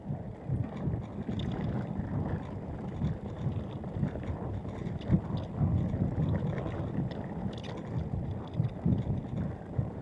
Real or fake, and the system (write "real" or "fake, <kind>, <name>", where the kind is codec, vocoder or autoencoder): real